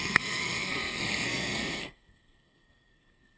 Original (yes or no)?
no